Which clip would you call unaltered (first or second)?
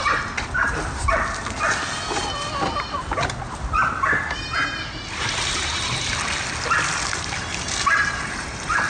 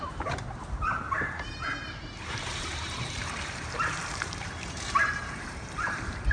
first